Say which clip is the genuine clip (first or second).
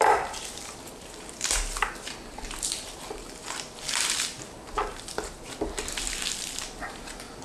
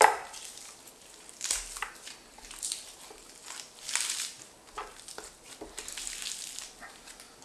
second